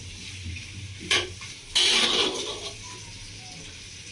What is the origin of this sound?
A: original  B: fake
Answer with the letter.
B